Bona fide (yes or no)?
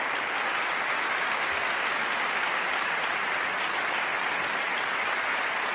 yes